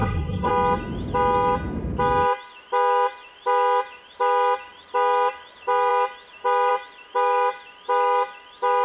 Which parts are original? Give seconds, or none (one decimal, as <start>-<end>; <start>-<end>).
0.5-8.8